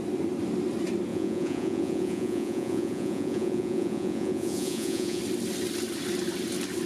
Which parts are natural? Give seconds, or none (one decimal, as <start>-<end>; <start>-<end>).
0.0-1.1; 5.2-6.9